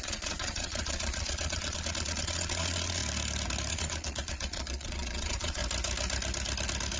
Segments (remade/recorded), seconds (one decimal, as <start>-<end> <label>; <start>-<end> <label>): 0.0-3.0 remade; 3.0-3.7 recorded; 3.7-5.6 remade; 5.6-7.0 recorded